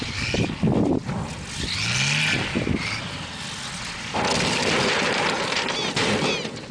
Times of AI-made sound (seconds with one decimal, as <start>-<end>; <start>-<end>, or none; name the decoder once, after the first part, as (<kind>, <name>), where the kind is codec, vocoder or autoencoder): none